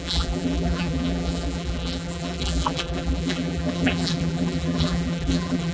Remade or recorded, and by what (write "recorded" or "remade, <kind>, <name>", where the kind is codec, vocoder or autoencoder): remade, vocoder, BigVGAN v2